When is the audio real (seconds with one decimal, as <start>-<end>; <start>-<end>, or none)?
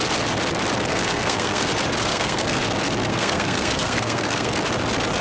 0.0-0.9; 1.7-2.1; 2.6-3.1; 4.5-5.2